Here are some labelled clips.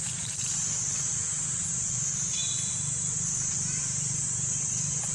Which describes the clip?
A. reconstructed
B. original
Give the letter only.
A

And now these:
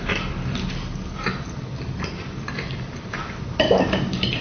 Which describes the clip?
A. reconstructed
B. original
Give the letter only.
B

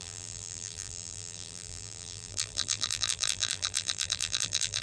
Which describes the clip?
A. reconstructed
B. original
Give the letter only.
A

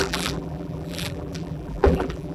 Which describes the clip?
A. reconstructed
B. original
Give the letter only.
A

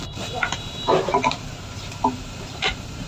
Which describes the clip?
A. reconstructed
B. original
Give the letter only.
A